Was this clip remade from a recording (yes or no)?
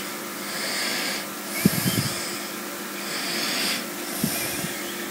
no